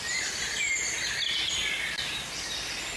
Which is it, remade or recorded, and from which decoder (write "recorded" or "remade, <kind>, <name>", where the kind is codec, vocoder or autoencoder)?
recorded